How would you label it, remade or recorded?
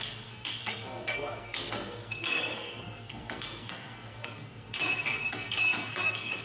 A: remade